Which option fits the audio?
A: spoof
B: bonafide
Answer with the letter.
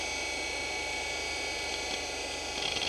B